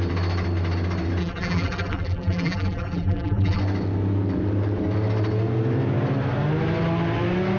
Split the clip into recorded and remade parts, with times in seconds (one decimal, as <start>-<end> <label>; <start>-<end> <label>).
0.0-1.2 recorded; 1.2-3.6 remade; 3.6-7.6 recorded